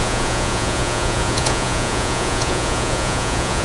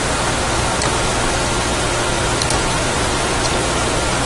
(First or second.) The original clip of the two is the second